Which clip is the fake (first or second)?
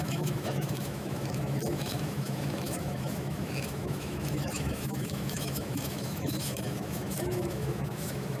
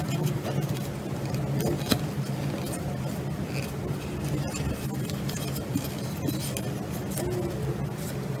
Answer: first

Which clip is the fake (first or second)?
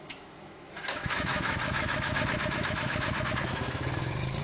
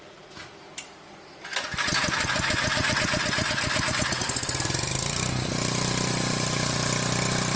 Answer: first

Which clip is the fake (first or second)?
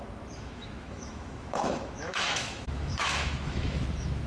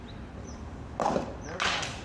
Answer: first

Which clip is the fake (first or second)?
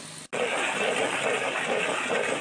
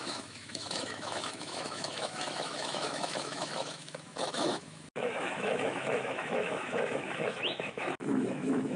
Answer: second